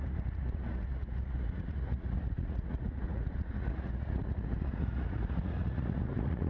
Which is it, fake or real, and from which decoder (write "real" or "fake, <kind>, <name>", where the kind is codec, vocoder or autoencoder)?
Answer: fake, vocoder, Vocos